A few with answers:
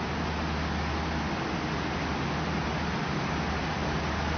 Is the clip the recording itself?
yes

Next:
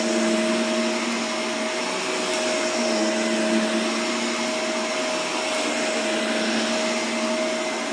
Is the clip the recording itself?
yes